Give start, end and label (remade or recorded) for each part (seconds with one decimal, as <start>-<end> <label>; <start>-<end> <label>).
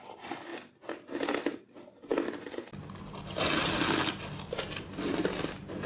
0.0-5.9 recorded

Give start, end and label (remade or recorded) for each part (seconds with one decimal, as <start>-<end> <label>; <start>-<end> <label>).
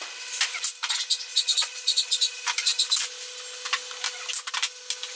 0.0-1.3 recorded; 1.3-2.2 remade; 2.2-5.2 recorded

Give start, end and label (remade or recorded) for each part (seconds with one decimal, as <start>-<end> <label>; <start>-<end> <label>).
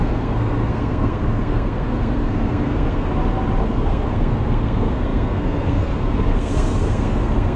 0.0-3.1 remade; 3.1-3.6 recorded; 3.6-7.6 remade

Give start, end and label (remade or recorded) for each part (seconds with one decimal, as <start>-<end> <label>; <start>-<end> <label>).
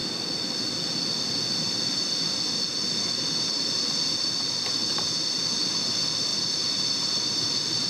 0.0-7.9 recorded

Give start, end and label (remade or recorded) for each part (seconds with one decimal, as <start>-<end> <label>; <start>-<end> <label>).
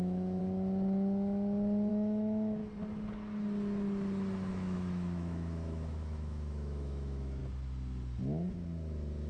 0.0-0.4 remade; 0.4-1.9 recorded; 1.9-2.6 remade; 2.6-4.5 recorded; 4.5-7.4 remade; 7.4-9.3 recorded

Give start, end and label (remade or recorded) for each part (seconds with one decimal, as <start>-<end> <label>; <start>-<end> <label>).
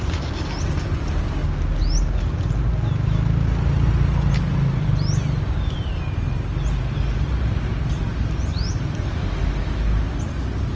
0.0-10.8 recorded